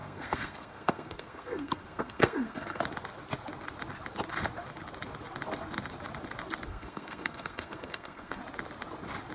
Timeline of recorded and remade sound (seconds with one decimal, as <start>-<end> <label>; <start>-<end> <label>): 0.0-2.8 remade; 2.8-6.7 recorded; 6.7-8.4 remade; 8.4-9.3 recorded